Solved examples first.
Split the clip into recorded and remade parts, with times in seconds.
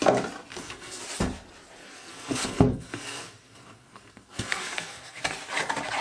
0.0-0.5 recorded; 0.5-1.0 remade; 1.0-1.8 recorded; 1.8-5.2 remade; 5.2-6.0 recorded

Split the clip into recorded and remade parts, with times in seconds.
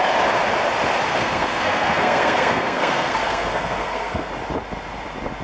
0.0-1.1 recorded; 1.1-4.3 remade; 4.3-5.4 recorded